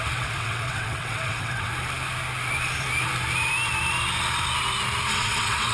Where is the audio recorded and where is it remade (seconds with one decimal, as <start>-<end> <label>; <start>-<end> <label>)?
0.0-1.7 remade; 1.7-5.1 recorded; 5.1-5.7 remade